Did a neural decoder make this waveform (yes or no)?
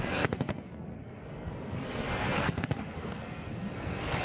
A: yes